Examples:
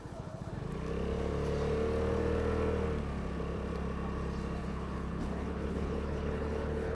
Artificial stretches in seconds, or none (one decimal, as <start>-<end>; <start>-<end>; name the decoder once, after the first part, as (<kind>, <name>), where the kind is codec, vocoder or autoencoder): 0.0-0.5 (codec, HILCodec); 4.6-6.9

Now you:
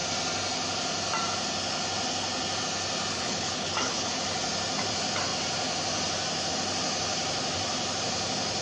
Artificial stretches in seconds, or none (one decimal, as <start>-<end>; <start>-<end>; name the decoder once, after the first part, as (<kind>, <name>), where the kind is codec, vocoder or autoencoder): 3.1-4.1 (codec, HILCodec)

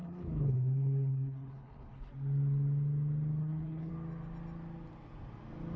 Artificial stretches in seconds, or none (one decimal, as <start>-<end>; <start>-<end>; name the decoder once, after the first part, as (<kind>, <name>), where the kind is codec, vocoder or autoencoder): 0.0-2.1 (codec, HILCodec); 3.4-3.9

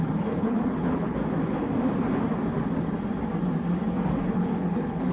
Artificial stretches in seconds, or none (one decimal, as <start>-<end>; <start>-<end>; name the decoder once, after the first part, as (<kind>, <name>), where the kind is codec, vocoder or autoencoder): 0.0-1.2 (codec, HILCodec); 4.3-5.1

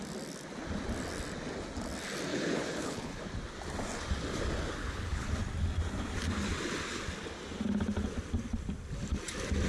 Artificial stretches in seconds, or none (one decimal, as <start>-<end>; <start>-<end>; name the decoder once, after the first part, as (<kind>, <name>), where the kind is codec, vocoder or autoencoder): 2.3-3.2 (codec, HILCodec); 4.8-5.3